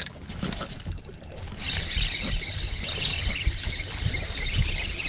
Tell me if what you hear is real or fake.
real